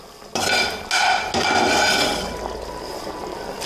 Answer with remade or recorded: recorded